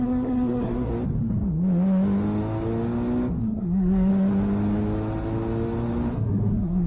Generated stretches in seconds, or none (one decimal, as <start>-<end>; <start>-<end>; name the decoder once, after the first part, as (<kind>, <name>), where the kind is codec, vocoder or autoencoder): 0.0-0.9 (codec, SNAC); 3.4-4.1; 6.1-6.9